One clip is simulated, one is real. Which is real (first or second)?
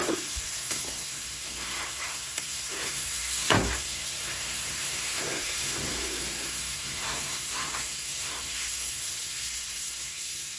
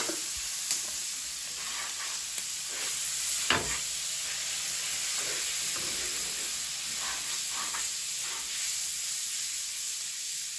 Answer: second